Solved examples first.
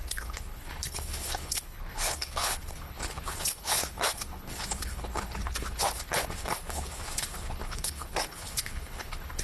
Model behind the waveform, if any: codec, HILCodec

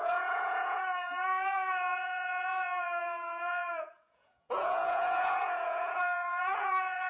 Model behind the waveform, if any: vocoder, Vocos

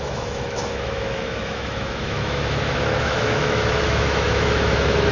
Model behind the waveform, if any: autoencoder, DAC-VAE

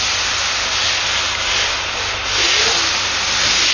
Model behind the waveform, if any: none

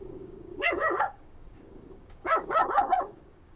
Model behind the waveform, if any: codec, DAC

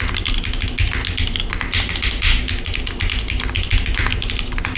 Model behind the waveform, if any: none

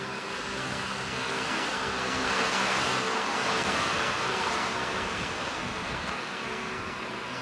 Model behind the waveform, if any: codec, SNAC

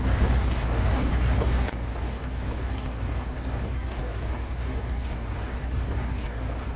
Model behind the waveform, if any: codec, DAC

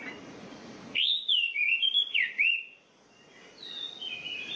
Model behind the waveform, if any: vocoder, Vocos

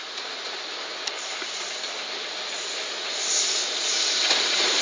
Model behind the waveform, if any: none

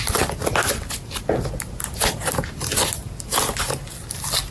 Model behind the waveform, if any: none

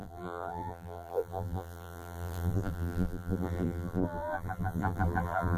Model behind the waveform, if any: vocoder, BigVGAN v2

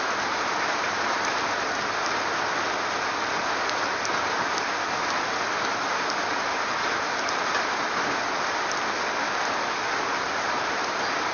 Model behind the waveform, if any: none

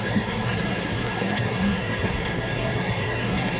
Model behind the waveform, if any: codec, SNAC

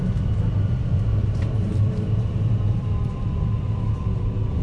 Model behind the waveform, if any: vocoder, BigVGAN v2